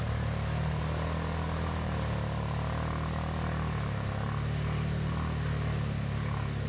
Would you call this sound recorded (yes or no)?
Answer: yes